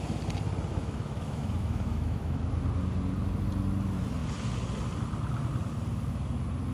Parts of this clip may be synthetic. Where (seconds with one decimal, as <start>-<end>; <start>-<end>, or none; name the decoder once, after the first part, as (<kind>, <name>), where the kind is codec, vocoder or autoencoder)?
0.7-2.5 (autoencoder, DAC-VAE)